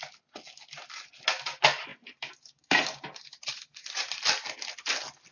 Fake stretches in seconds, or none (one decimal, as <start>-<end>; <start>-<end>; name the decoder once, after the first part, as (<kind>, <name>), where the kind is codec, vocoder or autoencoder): 1.9-4.2 (vocoder, BigVGAN v2)